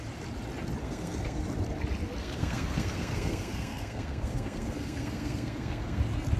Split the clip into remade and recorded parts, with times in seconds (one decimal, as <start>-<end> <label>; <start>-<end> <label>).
0.0-0.8 recorded; 0.8-1.4 remade; 1.4-2.2 recorded; 2.2-6.0 remade; 6.0-6.4 recorded